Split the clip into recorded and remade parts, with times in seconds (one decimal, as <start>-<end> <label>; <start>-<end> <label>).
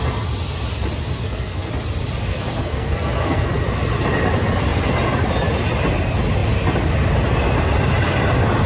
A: 0.0-1.2 recorded; 1.2-1.7 remade; 1.7-2.3 recorded; 2.3-3.5 remade; 3.5-8.7 recorded